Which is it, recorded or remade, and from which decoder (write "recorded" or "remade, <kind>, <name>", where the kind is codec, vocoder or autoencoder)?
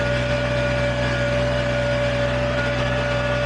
recorded